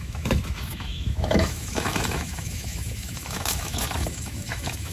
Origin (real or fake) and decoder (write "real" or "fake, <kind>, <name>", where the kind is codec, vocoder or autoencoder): fake, autoencoder, DAC-VAE